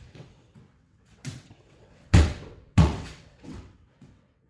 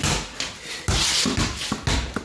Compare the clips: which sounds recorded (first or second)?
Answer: second